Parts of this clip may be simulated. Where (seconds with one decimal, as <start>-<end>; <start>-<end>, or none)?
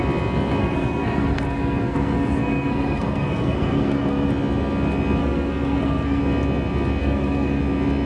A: 0.6-4.3; 5.2-6.2; 7.0-7.6